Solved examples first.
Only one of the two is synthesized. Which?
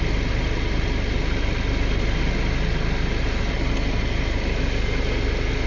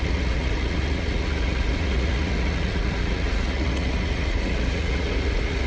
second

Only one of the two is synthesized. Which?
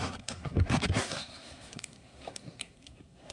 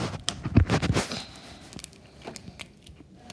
first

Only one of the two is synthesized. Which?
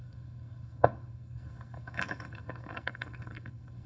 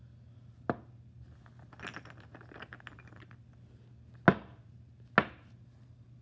first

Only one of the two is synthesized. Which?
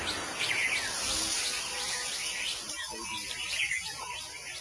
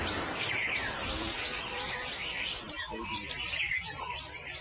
second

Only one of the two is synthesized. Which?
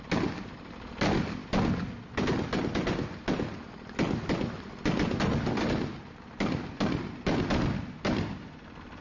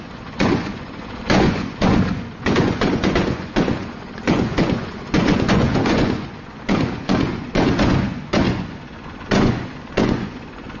second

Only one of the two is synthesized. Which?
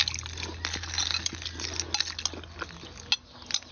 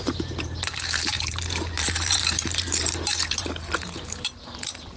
second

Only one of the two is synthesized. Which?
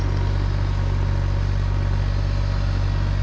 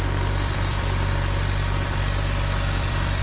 second